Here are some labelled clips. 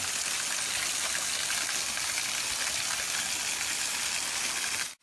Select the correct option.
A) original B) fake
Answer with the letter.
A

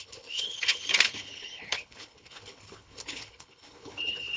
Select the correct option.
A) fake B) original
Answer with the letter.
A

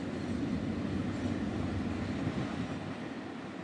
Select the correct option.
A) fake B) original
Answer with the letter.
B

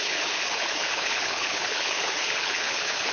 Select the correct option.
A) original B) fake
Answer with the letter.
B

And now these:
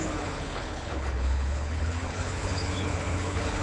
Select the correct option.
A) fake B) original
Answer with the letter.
A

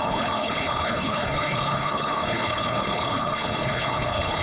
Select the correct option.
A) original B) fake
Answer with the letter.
B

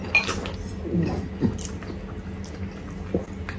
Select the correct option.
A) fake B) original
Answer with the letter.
B